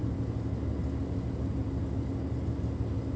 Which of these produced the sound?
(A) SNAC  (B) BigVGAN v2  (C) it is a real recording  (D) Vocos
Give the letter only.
C